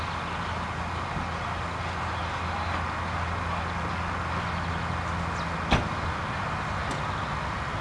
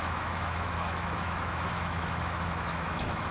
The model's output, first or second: second